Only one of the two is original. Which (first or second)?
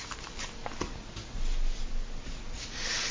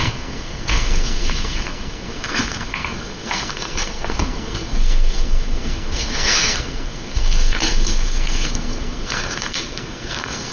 first